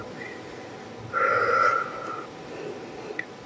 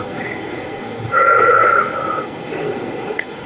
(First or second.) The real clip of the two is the first